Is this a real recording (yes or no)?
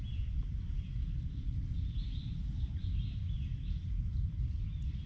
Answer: yes